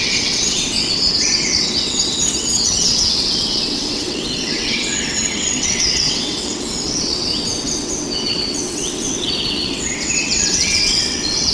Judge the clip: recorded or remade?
remade